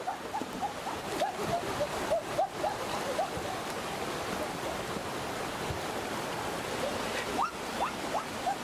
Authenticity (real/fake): real